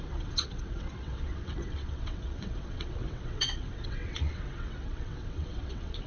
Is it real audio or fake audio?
fake